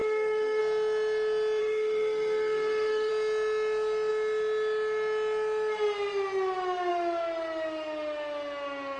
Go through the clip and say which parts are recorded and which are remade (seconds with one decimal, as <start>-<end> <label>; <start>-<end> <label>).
0.0-0.6 remade; 0.6-1.6 recorded; 1.6-3.1 remade; 3.1-9.0 recorded